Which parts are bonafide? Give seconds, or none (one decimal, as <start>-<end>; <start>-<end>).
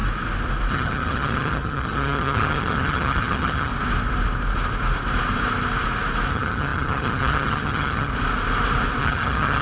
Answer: 0.0-0.7; 3.7-6.3; 8.1-9.0